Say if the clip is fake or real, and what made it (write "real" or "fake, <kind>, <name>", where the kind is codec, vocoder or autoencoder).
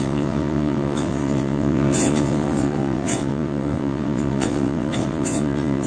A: fake, vocoder, WaveNeXt